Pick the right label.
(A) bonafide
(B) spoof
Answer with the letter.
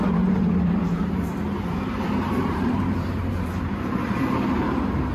B